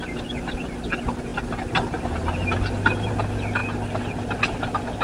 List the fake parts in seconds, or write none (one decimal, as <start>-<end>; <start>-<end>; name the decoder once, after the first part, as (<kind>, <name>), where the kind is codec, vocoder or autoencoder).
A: none

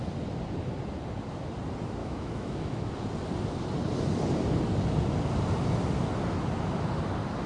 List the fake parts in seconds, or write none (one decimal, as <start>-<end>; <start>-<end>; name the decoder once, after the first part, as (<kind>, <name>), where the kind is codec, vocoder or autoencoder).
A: 2.0-2.9 (autoencoder, DAC-VAE)

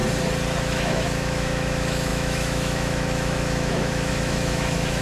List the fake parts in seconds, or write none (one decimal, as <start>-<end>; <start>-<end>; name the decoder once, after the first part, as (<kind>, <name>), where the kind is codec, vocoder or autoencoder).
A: 0.6-5.0 (autoencoder, DAC-VAE)

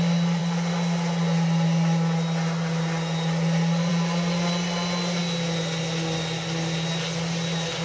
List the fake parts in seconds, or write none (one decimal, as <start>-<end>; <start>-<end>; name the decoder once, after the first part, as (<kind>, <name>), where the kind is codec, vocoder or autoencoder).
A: none

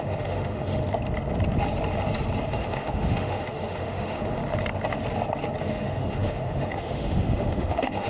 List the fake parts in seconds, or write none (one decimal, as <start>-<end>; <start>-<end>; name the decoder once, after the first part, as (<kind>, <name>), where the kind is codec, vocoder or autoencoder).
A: 0.0-0.8 (autoencoder, DAC-VAE); 2.5-4.4; 5.6-8.1